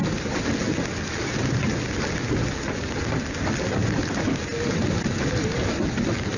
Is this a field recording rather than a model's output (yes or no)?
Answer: yes